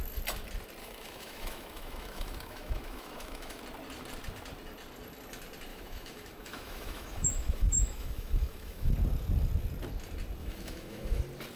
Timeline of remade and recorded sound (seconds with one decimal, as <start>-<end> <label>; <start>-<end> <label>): 0.0-0.8 recorded; 0.8-3.6 remade; 3.6-5.7 recorded; 5.7-8.9 remade; 8.9-10.4 recorded; 10.4-11.2 remade; 11.2-11.6 recorded